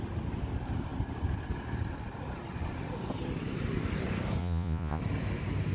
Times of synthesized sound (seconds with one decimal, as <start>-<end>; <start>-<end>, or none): 4.4-5.0